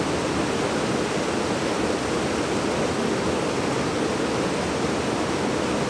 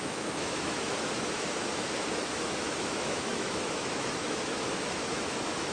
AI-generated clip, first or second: second